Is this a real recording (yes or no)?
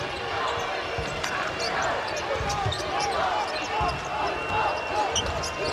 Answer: yes